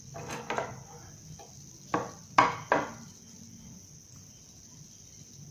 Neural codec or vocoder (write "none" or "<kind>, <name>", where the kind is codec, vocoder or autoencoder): none